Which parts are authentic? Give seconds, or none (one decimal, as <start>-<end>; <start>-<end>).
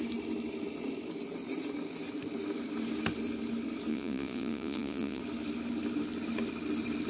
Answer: 0.0-3.9; 5.2-7.1